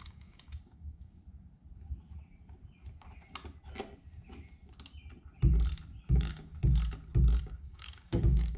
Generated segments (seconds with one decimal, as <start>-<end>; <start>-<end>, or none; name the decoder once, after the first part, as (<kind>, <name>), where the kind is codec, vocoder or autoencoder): 0.0-1.2 (codec, DAC); 6.0-6.6; 7.4-8.6